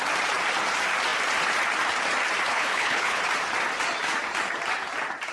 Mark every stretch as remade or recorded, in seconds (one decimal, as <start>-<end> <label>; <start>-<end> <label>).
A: 0.0-2.5 recorded; 2.5-3.2 remade; 3.2-5.3 recorded